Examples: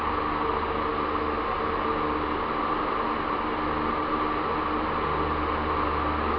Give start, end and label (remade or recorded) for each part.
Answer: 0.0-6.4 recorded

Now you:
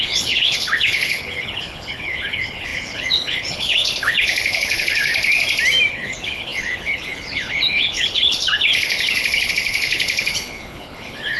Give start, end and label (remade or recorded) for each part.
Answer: 0.0-5.1 remade; 5.1-5.9 recorded; 5.9-11.4 remade

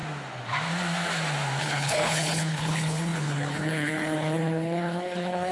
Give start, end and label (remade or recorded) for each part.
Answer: 0.0-1.6 recorded; 1.6-5.5 remade

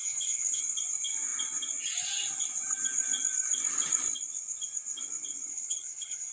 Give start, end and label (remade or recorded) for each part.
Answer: 0.0-0.6 remade; 0.6-5.5 recorded; 5.5-6.3 remade